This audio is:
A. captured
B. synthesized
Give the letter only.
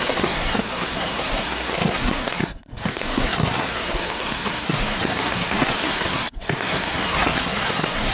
B